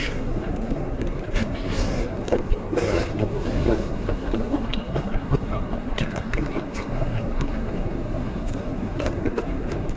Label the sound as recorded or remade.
remade